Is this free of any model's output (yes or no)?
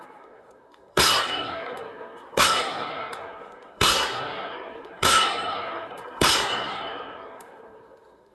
no